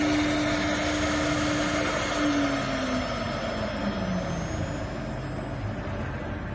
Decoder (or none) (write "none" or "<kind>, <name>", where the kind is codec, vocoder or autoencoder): none